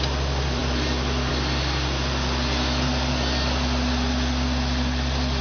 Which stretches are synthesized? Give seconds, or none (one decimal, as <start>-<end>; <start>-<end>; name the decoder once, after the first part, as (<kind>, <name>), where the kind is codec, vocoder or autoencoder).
none